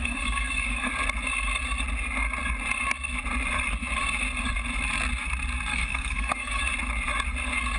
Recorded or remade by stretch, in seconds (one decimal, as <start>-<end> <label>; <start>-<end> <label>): 0.0-0.9 remade; 0.9-5.7 recorded; 5.7-6.6 remade; 6.6-7.8 recorded